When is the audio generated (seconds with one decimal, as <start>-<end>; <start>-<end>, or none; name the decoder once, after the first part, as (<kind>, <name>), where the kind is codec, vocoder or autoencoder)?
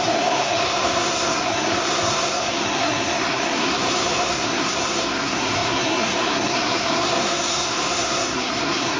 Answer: 0.0-9.0 (codec, SNAC)